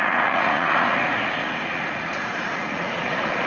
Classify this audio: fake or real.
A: fake